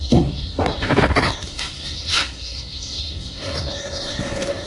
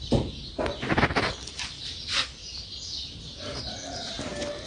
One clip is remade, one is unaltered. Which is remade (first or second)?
first